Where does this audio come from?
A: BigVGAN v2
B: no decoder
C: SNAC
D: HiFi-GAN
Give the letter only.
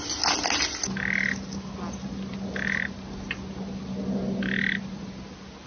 B